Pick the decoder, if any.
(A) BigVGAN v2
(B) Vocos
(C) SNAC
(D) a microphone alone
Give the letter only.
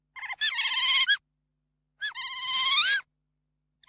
D